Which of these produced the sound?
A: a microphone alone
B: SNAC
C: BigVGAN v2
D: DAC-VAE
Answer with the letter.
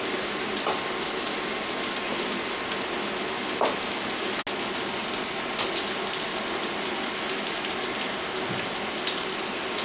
A